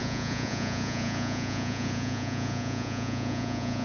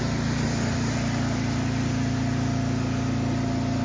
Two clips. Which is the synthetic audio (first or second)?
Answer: first